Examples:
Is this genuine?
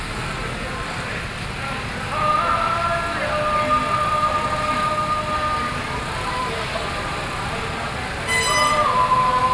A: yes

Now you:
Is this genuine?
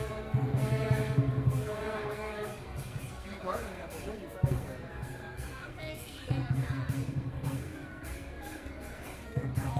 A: no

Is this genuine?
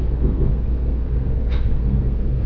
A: no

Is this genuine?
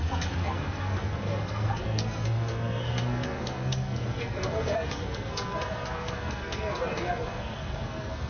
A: no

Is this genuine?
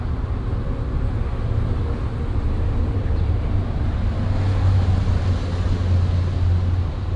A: yes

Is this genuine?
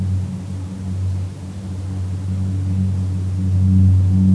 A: yes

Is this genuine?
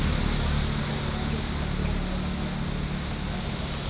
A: yes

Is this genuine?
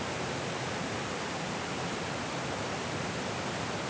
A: yes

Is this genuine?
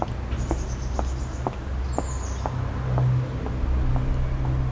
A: yes